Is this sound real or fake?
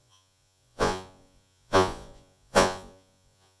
fake